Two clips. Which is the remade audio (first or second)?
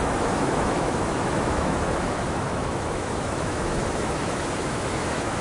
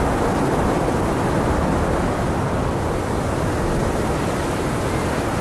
first